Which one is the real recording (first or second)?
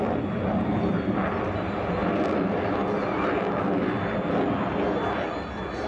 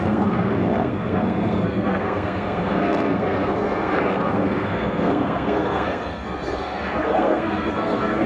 first